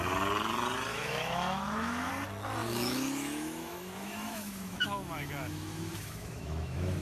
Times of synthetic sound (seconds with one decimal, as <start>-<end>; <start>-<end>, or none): 0.9-2.1; 2.6-7.0